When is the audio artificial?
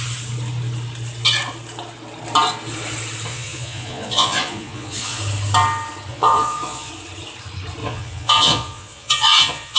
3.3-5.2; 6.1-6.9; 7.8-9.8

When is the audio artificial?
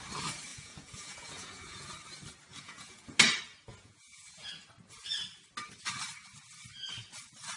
0.5-1.9; 2.5-3.2; 3.7-4.6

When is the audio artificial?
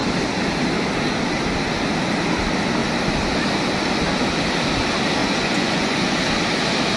5.2-6.2